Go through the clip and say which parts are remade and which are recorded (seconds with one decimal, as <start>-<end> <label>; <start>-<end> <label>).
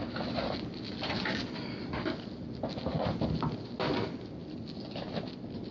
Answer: 0.0-5.7 recorded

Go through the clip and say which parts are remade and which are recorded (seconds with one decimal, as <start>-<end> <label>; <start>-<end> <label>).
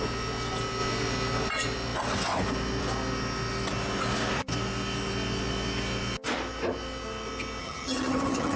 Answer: 0.0-7.6 recorded; 7.6-8.6 remade